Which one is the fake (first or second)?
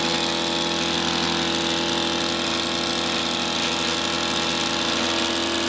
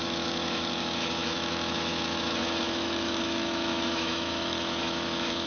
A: second